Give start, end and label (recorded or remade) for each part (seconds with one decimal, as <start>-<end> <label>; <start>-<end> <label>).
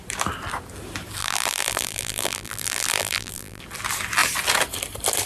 0.0-1.2 recorded; 1.2-3.6 remade; 3.6-5.3 recorded